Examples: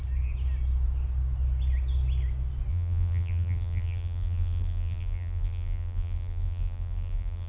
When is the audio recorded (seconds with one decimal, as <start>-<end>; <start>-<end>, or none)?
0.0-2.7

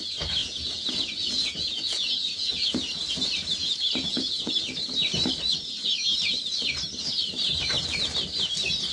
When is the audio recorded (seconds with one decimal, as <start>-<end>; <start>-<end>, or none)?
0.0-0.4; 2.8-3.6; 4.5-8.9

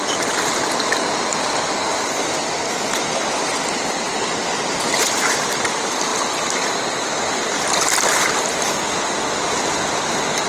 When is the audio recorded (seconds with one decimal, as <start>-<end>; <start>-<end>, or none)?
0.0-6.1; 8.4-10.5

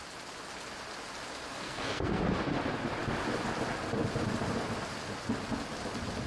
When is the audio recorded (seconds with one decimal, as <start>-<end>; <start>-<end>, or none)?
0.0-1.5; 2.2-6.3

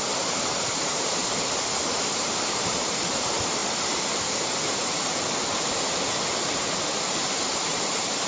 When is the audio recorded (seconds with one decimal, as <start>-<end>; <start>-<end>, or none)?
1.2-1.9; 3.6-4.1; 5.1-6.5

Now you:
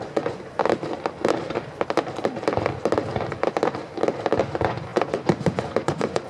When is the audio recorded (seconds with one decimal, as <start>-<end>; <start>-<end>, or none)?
0.6-4.4

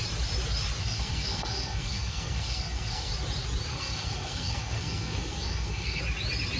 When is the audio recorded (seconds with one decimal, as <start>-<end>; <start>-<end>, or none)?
0.0-0.8; 3.1-3.7; 6.0-6.6